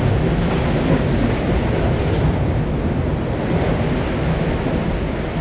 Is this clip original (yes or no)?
yes